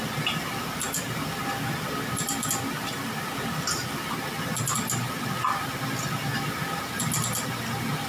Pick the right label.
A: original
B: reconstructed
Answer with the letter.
A